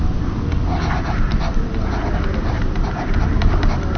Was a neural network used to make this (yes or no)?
no